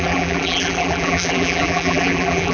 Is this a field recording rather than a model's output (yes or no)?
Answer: no